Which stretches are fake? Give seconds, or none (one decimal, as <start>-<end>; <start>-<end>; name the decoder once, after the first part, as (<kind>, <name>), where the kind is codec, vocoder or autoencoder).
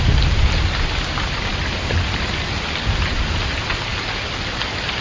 none